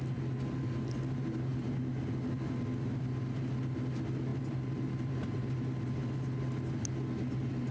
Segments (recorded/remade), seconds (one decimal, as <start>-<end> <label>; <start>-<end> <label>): 0.0-4.3 recorded; 4.3-5.5 remade; 5.5-7.7 recorded